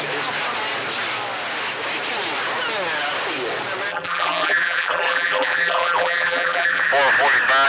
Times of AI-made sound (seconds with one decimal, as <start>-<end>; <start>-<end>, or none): 3.9-6.9